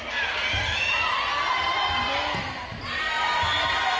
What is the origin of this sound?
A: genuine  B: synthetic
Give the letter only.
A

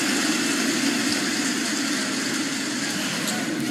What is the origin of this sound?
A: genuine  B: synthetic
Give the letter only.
A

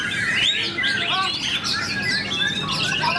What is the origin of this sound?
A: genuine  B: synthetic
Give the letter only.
A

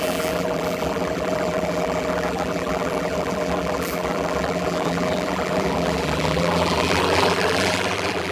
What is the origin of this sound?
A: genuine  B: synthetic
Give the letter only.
B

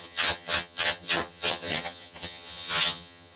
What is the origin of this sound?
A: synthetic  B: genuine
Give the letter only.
A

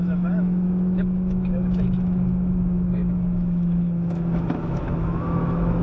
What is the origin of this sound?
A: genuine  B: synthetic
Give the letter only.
B